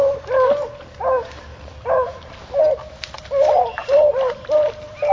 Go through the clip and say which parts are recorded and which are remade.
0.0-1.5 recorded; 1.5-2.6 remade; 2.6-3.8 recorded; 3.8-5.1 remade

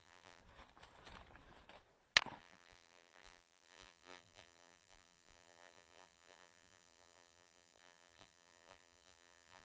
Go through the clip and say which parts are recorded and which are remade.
0.0-0.4 remade; 0.4-2.4 recorded; 2.4-9.6 remade

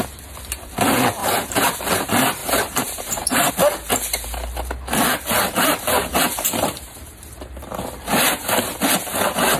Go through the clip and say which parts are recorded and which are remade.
0.0-1.2 recorded; 1.2-1.8 remade; 1.8-2.4 recorded; 2.4-3.5 remade; 3.5-6.1 recorded; 6.1-7.0 remade; 7.0-9.6 recorded